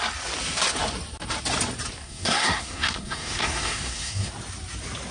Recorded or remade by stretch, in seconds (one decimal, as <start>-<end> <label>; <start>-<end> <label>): 0.0-2.0 recorded; 2.0-4.3 remade; 4.3-5.1 recorded